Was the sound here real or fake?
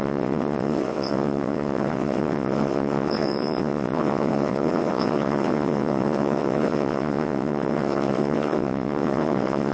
fake